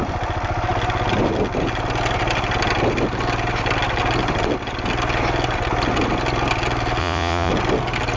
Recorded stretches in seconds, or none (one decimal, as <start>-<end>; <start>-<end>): 0.0-7.0; 7.5-8.2